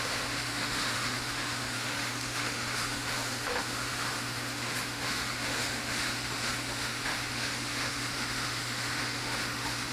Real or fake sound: fake